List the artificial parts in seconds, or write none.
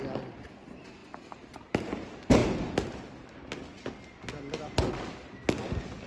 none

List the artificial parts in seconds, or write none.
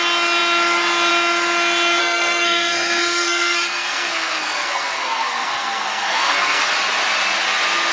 2.0-6.7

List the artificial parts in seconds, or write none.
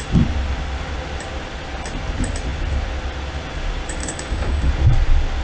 4.0-4.7